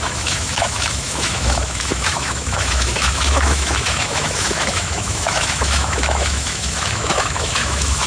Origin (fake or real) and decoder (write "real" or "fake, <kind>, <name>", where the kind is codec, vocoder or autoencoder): fake, autoencoder, DAC-VAE